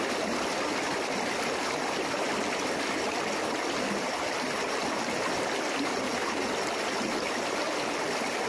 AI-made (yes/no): no